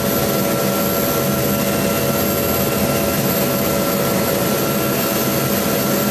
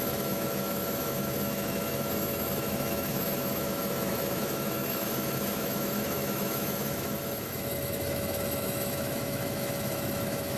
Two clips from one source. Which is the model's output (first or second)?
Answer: second